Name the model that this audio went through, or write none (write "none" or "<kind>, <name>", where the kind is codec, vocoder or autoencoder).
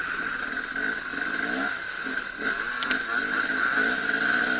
none